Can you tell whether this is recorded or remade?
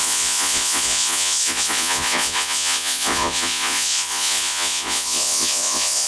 remade